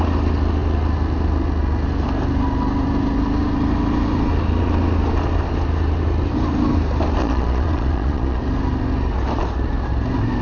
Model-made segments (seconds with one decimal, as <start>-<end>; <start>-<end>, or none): 7.2-8.4